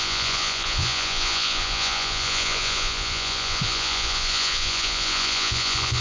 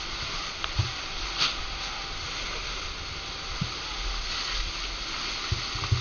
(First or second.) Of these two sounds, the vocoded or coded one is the first